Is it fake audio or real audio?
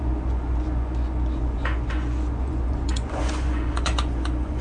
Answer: fake